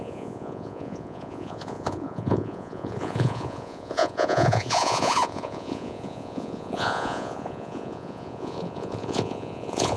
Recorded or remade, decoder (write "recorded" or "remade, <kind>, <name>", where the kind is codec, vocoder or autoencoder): remade, vocoder, Vocos